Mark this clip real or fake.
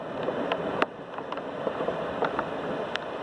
real